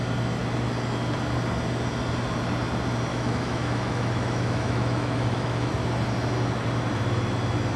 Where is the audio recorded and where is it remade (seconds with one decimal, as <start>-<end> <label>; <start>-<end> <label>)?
0.0-3.1 recorded; 3.1-5.7 remade; 5.7-7.8 recorded